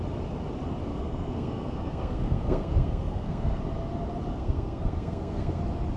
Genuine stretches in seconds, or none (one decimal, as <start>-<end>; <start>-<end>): 0.0-0.9; 3.6-4.3; 5.6-6.0